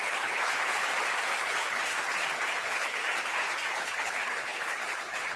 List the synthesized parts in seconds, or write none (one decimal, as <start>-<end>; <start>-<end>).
0.0-0.9; 1.4-1.9; 2.5-3.0; 3.7-5.4